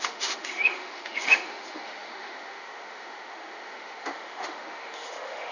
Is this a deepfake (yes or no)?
yes